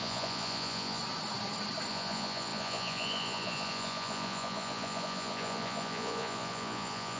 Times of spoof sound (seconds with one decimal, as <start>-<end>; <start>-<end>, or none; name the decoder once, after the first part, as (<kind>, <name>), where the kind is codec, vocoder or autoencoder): 0.0-1.0 (vocoder, Vocos); 1.9-7.2